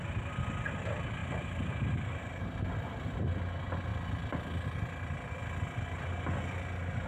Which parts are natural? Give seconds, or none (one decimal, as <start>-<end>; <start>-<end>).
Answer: 0.0-1.2; 2.4-7.1